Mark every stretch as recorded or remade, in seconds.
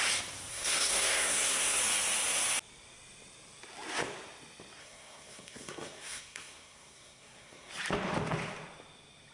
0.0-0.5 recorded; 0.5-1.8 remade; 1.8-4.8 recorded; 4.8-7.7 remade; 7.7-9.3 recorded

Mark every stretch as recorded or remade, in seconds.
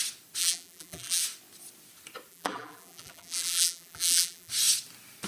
0.0-0.4 recorded; 0.4-1.2 remade; 1.2-2.3 recorded; 2.3-4.5 remade; 4.5-5.3 recorded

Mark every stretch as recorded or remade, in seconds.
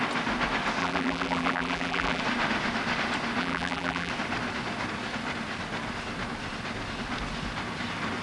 0.0-0.8 recorded; 0.8-2.2 remade; 2.2-3.4 recorded; 3.4-4.1 remade; 4.1-8.2 recorded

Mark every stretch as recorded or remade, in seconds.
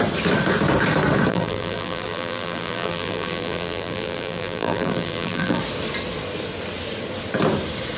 0.0-1.3 recorded; 1.3-5.6 remade; 5.6-8.0 recorded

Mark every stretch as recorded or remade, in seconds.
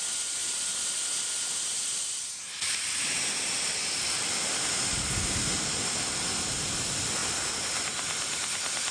0.0-8.9 recorded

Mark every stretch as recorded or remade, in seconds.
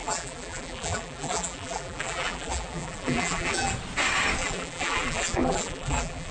0.0-3.7 remade; 3.7-4.4 recorded; 4.4-6.3 remade